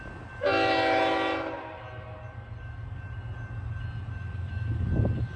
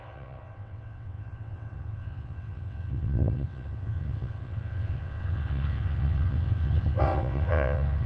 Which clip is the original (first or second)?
first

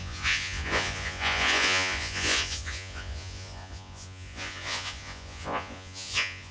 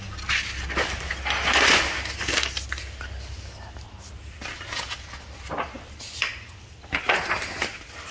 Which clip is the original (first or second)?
second